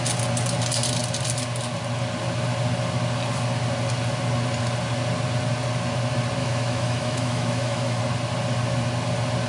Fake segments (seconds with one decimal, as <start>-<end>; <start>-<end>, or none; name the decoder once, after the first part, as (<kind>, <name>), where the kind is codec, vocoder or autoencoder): 6.4-8.0 (autoencoder, DAC-VAE)